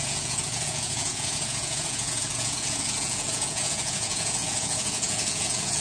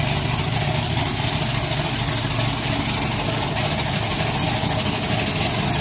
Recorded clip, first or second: second